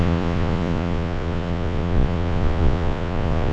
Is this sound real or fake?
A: fake